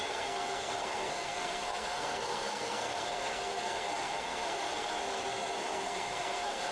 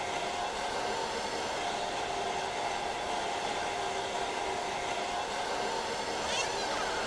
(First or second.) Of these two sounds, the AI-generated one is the first